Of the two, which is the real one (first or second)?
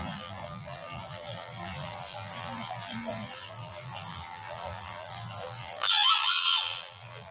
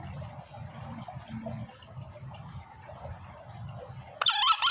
second